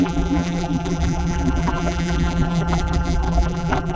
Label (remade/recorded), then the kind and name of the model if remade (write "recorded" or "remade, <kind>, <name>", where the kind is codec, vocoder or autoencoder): remade, vocoder, BigVGAN v2